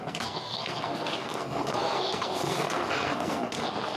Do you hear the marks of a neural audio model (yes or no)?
yes